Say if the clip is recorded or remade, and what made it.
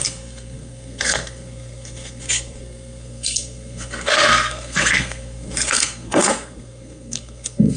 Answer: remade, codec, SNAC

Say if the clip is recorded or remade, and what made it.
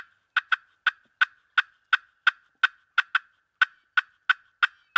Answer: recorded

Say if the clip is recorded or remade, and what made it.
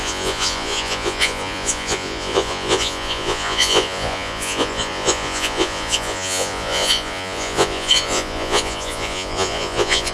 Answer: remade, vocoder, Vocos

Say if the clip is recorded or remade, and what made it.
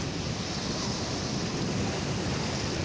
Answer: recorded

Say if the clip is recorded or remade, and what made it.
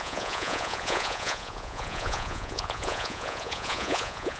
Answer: remade, vocoder, Vocos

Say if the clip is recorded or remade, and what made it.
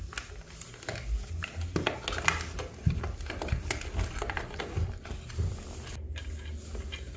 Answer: recorded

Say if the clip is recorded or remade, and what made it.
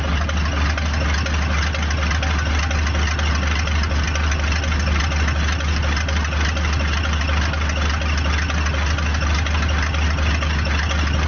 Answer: recorded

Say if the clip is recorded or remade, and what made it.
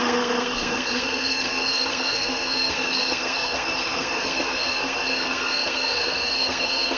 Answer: remade, codec, SNAC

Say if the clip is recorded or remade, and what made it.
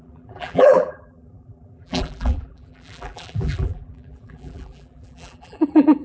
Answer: remade, vocoder, BigVGAN v2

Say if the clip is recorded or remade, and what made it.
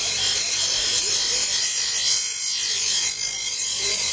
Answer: remade, vocoder, BigVGAN v2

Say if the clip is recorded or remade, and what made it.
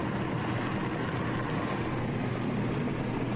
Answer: recorded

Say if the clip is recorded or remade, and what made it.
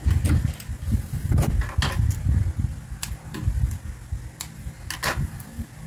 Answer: recorded